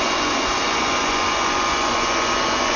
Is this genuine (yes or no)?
no